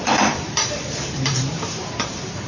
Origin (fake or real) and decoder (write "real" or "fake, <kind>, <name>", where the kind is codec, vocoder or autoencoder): fake, vocoder, BigVGAN v2